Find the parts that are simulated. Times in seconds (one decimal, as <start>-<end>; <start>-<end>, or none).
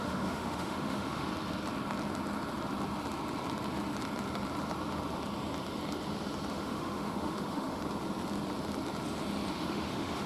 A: 0.0-1.3; 6.5-7.8; 9.5-10.3